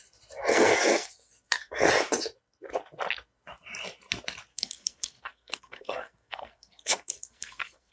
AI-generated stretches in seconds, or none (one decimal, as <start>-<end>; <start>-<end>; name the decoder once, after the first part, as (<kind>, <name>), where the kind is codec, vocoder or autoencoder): 0.5-1.9 (codec, SNAC); 4.5-7.9